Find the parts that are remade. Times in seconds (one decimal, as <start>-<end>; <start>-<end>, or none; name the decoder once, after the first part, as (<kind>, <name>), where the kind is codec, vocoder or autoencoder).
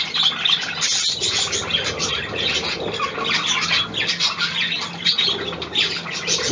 none